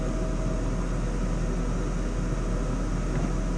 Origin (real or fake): real